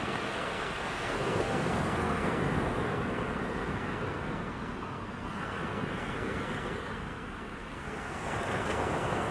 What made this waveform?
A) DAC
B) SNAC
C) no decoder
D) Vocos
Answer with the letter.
B